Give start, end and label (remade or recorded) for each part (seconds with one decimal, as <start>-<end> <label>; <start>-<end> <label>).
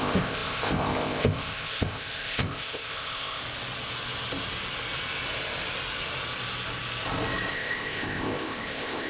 0.0-3.4 remade; 3.4-7.5 recorded; 7.5-9.1 remade